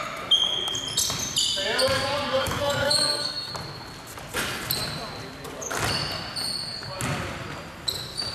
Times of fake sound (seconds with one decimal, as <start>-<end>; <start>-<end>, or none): 2.4-3.5